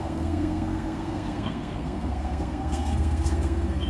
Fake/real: fake